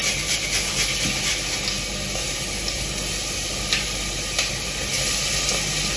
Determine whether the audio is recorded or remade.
recorded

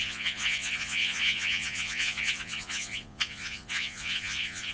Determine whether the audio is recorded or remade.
remade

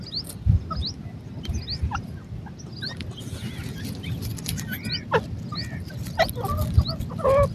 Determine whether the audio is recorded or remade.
recorded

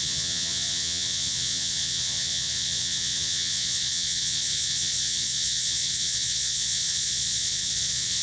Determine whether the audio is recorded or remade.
remade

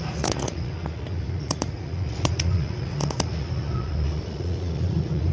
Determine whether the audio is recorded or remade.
remade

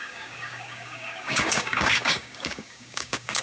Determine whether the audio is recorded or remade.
remade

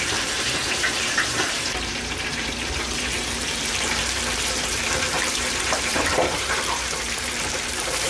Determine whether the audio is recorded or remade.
remade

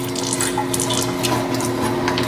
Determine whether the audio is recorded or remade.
recorded